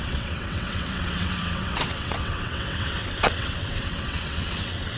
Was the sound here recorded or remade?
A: remade